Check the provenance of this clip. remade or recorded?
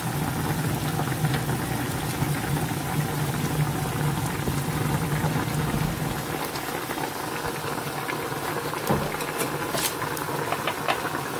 recorded